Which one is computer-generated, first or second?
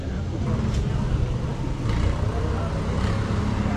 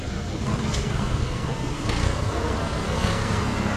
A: second